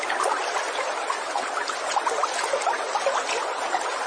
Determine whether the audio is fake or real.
real